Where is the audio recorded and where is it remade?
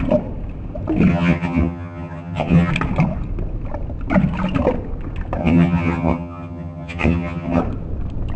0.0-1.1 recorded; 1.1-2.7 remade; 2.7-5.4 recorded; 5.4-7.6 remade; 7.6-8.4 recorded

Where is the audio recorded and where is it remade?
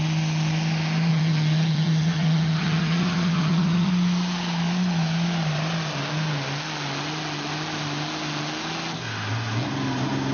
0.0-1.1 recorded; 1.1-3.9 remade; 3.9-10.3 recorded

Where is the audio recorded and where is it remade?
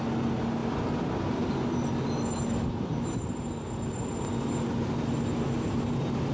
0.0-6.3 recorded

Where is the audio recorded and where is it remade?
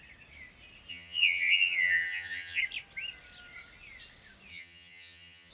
0.0-0.9 recorded; 0.9-2.6 remade; 2.6-4.5 recorded; 4.5-5.5 remade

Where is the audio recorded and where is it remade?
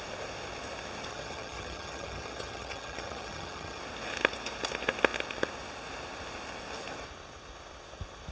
0.0-1.1 recorded; 1.1-3.8 remade; 3.8-8.3 recorded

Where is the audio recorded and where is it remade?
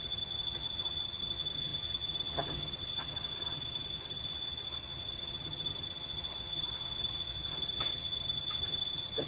0.0-9.3 remade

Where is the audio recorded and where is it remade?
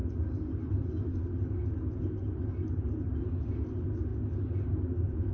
0.0-5.3 recorded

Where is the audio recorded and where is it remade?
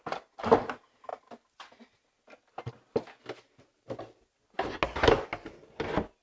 0.0-6.2 recorded